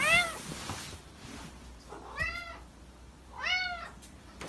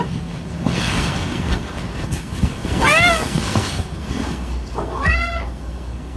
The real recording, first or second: first